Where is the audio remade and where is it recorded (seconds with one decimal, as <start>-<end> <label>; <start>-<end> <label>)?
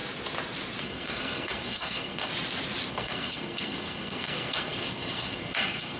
0.0-0.8 recorded; 0.8-2.3 remade; 2.3-2.9 recorded; 2.9-6.0 remade